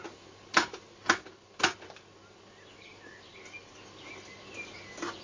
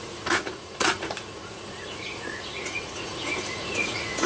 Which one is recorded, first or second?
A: first